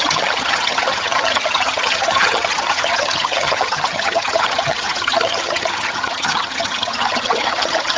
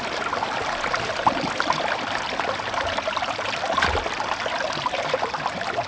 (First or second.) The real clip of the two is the second